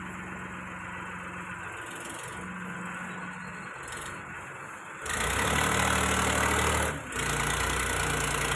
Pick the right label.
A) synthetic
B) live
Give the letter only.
B